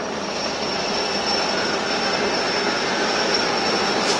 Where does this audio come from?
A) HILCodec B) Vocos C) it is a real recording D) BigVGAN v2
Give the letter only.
C